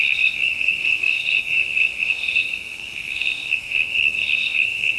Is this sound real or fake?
fake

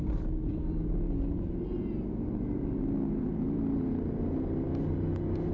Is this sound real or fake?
real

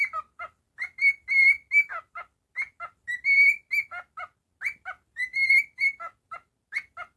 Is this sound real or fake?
real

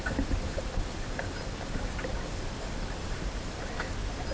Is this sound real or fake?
real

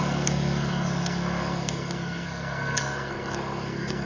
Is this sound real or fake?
fake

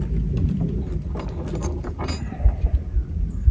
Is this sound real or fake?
real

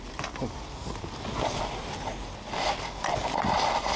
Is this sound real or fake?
real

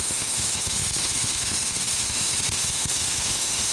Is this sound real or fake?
fake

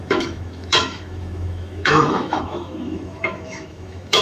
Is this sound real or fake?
fake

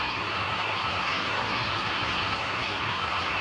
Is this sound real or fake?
fake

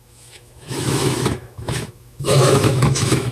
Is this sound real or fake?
fake